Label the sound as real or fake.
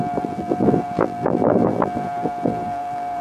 fake